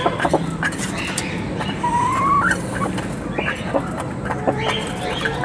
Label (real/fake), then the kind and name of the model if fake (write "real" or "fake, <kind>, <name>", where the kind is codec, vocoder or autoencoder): real